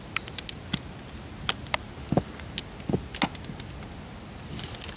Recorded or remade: recorded